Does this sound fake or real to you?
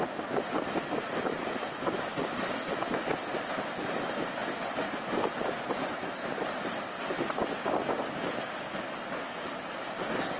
real